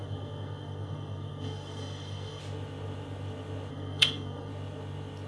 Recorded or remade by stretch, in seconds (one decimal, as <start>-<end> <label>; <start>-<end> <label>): 0.0-2.4 remade; 2.4-3.7 recorded; 3.7-4.5 remade; 4.5-5.3 recorded